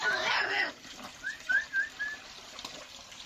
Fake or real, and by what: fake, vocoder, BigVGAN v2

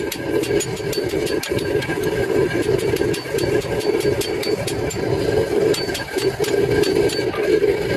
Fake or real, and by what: real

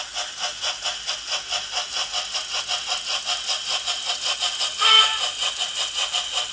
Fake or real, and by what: real